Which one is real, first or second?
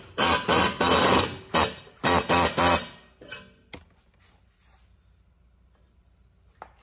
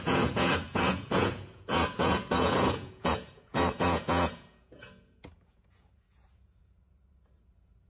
first